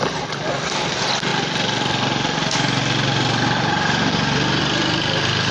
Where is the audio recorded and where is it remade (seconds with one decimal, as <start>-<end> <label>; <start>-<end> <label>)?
0.0-1.3 remade; 1.3-4.6 recorded; 4.6-5.5 remade